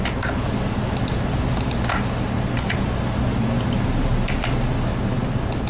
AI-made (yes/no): no